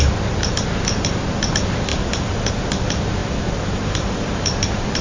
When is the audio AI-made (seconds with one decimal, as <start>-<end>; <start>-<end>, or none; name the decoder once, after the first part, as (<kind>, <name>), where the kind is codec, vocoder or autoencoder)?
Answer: 1.9-2.5 (vocoder, BigVGAN v2); 3.2-5.0